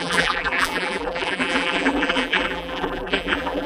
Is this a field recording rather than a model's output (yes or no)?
no